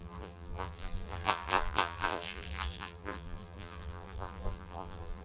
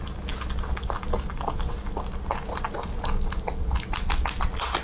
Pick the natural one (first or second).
second